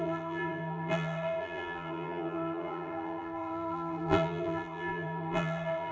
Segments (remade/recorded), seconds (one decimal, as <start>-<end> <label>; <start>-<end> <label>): 0.0-5.9 remade